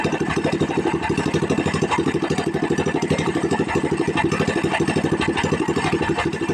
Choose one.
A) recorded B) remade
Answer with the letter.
A